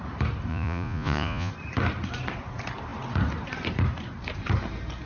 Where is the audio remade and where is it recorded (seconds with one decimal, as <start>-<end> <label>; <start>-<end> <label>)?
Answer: 0.0-0.5 recorded; 0.5-1.5 remade; 1.5-5.1 recorded